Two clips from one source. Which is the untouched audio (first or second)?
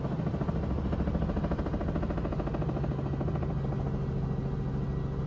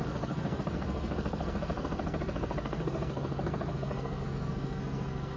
first